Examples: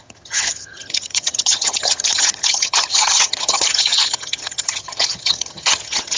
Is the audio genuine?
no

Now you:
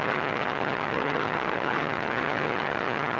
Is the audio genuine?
no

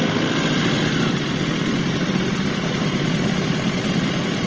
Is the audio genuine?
yes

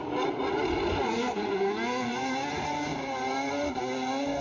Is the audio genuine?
yes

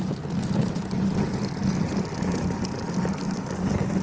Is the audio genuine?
yes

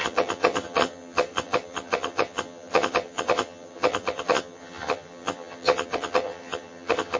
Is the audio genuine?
no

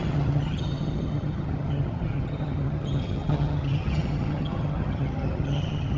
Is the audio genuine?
no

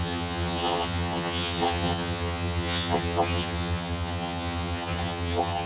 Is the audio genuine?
no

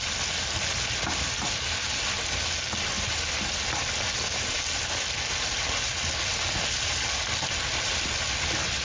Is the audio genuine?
yes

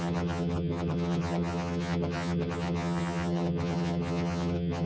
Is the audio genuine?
no